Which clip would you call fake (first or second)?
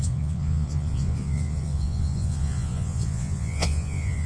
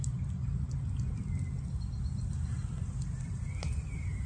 first